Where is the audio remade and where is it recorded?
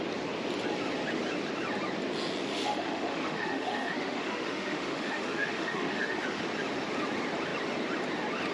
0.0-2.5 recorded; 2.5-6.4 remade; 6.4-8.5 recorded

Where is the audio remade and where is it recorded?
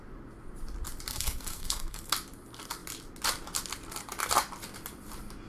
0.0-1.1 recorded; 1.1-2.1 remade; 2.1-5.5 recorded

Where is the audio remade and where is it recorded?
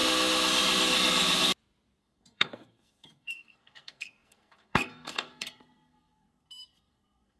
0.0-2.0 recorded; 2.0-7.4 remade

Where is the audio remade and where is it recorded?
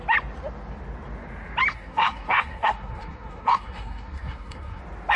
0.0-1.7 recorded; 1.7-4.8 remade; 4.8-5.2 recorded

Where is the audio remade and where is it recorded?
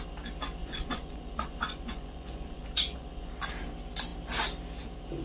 0.0-0.6 recorded; 0.6-3.3 remade; 3.3-5.2 recorded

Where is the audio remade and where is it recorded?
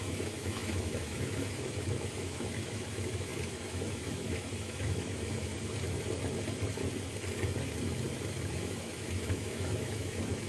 0.0-5.5 remade; 5.5-8.5 recorded; 8.5-10.5 remade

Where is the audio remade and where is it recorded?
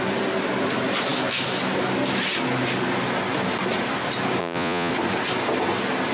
0.0-4.4 recorded; 4.4-4.9 remade; 4.9-6.1 recorded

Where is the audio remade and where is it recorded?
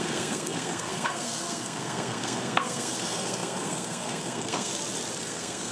0.0-4.7 remade; 4.7-5.2 recorded; 5.2-5.7 remade